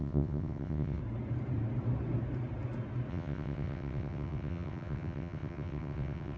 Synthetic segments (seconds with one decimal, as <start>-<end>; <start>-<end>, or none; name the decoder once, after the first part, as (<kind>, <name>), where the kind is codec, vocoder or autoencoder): 0.0-1.0 (vocoder, WaveNeXt); 3.1-6.4